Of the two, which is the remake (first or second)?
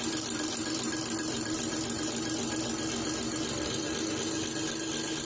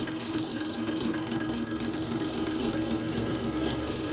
second